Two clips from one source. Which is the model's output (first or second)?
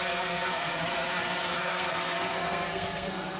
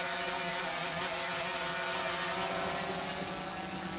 first